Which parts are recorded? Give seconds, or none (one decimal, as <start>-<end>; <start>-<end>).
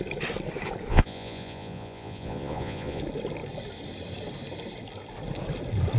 0.0-0.9; 3.0-6.0